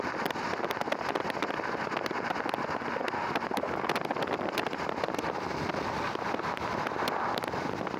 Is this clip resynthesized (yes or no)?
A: no